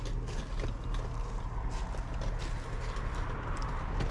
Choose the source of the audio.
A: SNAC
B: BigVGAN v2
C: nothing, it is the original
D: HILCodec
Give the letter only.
C